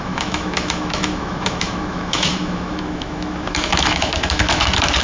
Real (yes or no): no